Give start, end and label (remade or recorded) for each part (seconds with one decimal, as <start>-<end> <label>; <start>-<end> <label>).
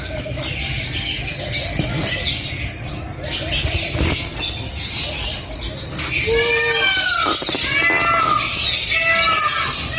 0.0-10.0 recorded